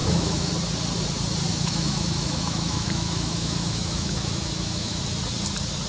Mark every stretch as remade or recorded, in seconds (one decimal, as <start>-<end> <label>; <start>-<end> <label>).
0.0-0.5 remade; 0.5-1.5 recorded; 1.5-5.0 remade; 5.0-5.9 recorded